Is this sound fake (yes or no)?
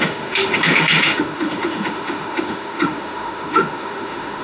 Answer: yes